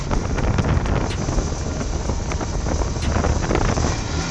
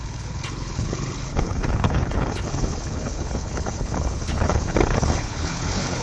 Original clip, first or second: first